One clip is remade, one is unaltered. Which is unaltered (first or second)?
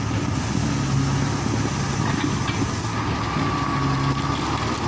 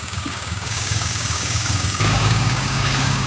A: first